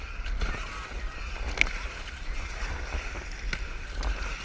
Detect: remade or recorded recorded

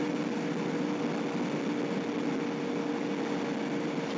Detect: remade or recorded recorded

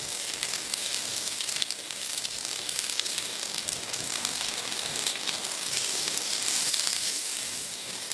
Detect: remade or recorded remade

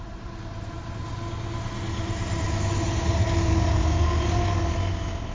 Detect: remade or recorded recorded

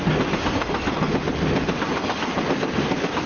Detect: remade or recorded recorded